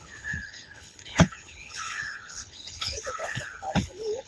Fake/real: fake